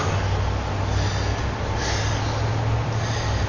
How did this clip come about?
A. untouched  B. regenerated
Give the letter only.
A